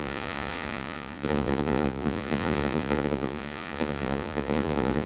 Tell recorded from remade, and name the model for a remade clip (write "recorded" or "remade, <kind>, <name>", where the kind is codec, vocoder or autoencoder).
remade, vocoder, Vocos